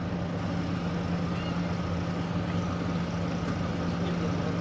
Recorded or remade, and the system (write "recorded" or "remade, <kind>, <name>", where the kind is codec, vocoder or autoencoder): recorded